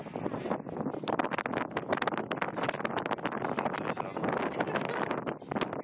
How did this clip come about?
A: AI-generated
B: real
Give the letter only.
B